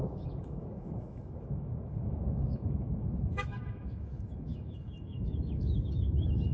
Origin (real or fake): fake